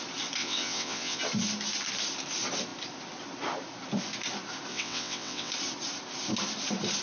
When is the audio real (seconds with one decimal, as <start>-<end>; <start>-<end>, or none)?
0.0-0.4; 1.2-4.7; 5.5-7.0